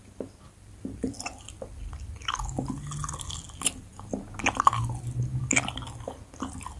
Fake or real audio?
real